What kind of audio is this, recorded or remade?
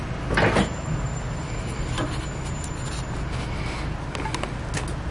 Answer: recorded